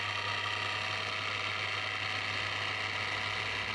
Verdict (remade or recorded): recorded